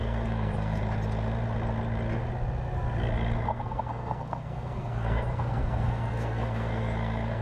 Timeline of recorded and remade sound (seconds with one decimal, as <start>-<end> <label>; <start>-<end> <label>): 0.0-0.8 remade; 0.8-3.5 recorded; 3.5-7.4 remade